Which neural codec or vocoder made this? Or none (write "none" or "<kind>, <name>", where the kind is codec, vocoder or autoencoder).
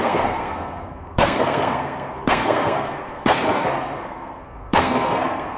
codec, SNAC